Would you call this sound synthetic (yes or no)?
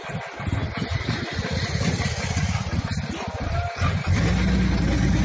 no